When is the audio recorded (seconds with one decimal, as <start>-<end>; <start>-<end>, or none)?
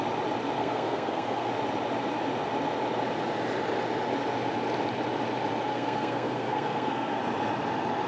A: 0.0-0.6; 1.5-5.7; 7.2-8.1